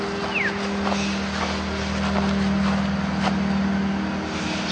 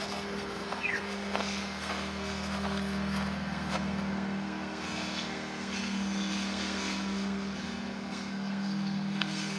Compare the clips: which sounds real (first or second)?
first